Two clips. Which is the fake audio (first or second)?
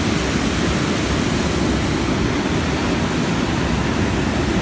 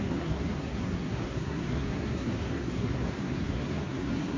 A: second